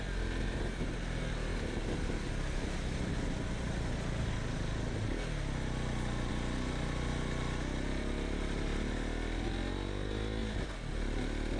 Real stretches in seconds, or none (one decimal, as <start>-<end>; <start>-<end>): 0.0-11.6